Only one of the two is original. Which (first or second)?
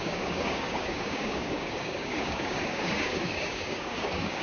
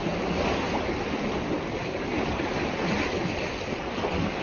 second